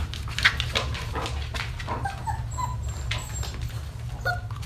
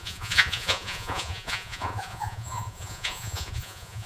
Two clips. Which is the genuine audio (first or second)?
first